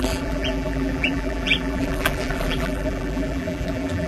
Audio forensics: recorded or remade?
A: remade